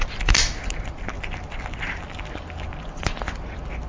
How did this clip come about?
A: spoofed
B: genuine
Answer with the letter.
B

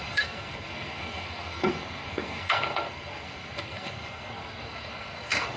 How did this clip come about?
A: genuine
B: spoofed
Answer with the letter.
B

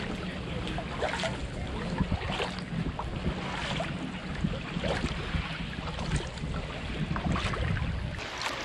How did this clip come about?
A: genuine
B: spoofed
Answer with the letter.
A